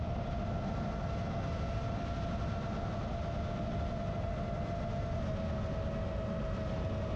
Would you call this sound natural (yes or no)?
yes